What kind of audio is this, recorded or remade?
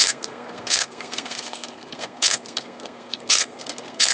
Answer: remade